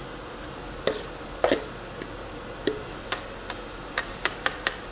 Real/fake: real